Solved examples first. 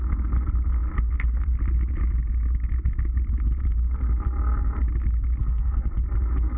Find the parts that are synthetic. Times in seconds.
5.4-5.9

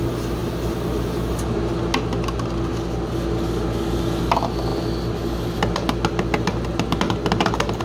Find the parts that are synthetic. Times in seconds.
none

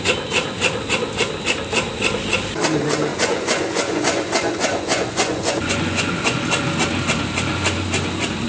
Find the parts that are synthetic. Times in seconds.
3.1-6.4

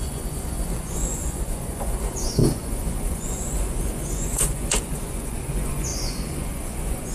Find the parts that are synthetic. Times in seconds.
0.0-7.1